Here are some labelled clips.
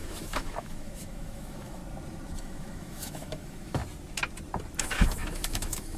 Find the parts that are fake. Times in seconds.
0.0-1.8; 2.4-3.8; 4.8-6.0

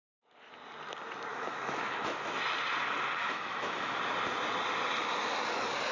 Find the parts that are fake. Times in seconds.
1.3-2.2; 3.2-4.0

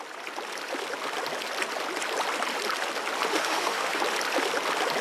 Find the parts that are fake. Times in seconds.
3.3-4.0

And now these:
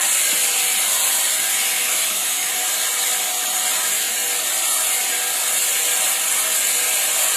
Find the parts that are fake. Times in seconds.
1.8-2.5

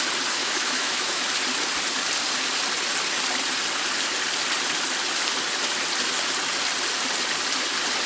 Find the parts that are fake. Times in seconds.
0.4-1.2